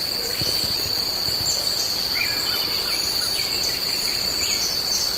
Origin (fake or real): fake